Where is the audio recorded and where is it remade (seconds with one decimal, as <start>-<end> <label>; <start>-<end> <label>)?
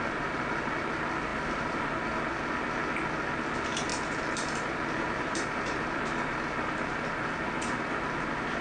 0.0-1.3 recorded; 1.3-1.8 remade; 1.8-3.9 recorded; 3.9-6.0 remade; 6.0-8.6 recorded